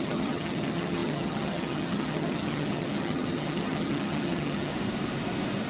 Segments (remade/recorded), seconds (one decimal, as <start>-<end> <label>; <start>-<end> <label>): 0.0-4.7 remade; 4.7-5.7 recorded